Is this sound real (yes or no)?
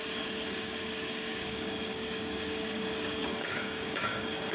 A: no